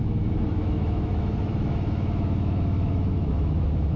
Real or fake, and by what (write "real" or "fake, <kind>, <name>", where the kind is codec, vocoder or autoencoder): fake, autoencoder, DAC-VAE